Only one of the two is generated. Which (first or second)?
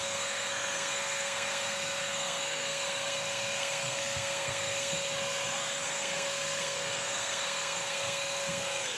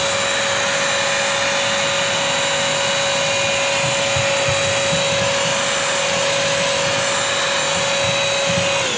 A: first